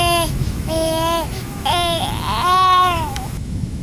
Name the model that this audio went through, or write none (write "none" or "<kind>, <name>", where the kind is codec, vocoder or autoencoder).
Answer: autoencoder, DAC-VAE